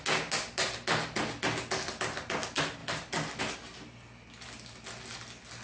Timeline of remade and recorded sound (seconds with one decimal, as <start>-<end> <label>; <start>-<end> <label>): 0.0-5.6 recorded